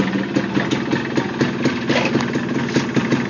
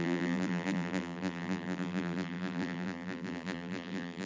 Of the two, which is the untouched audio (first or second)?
first